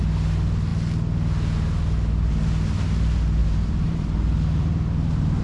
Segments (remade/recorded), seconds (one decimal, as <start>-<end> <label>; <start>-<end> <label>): 0.0-3.4 recorded; 3.4-5.4 remade